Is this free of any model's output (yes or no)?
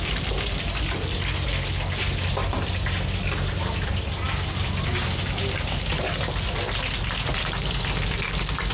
yes